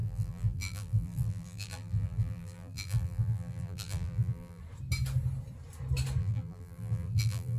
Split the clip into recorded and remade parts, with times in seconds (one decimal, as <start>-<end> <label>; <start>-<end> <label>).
0.0-4.6 remade; 4.6-6.2 recorded; 6.2-7.6 remade